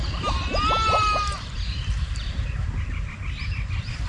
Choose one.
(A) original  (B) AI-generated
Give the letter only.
A